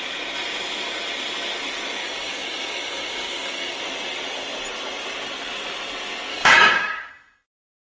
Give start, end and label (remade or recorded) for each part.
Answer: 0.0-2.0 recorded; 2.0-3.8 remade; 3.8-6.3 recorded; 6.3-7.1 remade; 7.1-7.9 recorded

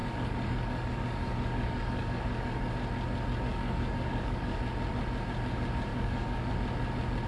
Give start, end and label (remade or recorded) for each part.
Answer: 0.0-2.7 remade; 2.7-3.5 recorded; 3.5-4.6 remade; 4.6-5.9 recorded; 5.9-6.5 remade; 6.5-7.3 recorded

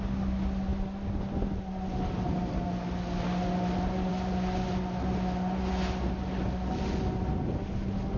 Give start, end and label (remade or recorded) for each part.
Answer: 0.0-8.2 recorded

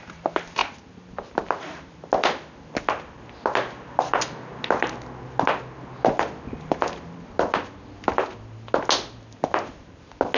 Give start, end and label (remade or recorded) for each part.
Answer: 0.0-10.4 recorded